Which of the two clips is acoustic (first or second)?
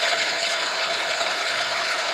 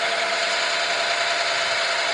second